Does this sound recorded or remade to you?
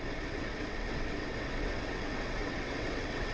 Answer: remade